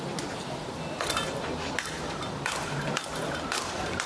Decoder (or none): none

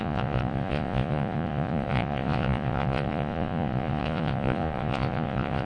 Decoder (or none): vocoder, Vocos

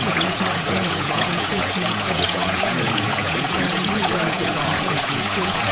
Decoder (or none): vocoder, Vocos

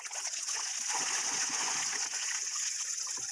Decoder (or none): vocoder, Vocos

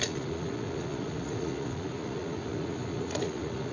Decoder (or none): vocoder, Vocos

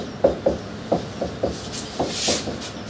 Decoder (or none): none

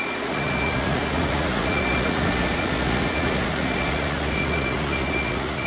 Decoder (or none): vocoder, Vocos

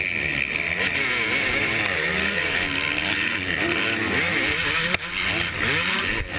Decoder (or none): none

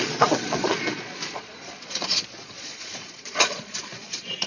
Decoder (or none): vocoder, Vocos